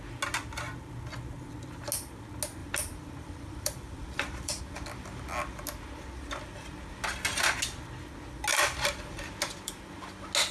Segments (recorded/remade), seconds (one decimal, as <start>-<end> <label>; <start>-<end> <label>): 0.0-2.6 recorded; 2.6-4.6 remade; 4.6-8.5 recorded; 8.5-9.7 remade; 9.7-10.5 recorded